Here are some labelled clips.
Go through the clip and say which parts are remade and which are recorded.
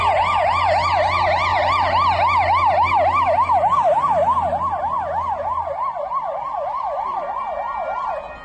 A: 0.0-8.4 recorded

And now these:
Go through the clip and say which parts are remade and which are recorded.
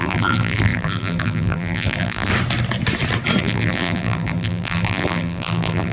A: 0.0-2.3 remade; 2.3-3.4 recorded; 3.4-5.9 remade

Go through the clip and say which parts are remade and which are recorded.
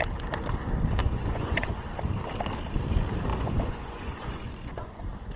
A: 0.0-1.0 recorded; 1.0-1.8 remade; 1.8-3.3 recorded; 3.3-5.0 remade; 5.0-5.4 recorded